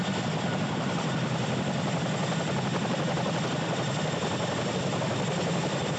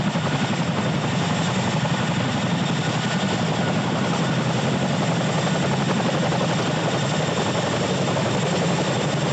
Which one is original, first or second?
second